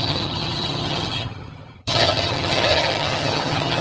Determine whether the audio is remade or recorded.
remade